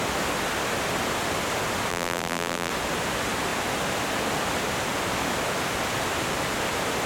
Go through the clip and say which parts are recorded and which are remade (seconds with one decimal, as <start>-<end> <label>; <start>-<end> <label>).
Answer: 0.0-1.9 recorded; 1.9-2.7 remade; 2.7-7.1 recorded